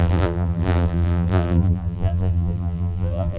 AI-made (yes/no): yes